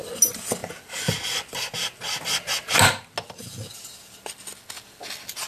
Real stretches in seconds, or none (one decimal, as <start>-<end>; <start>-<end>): 0.0-5.5